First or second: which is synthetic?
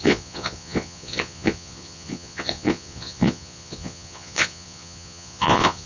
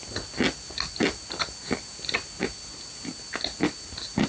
first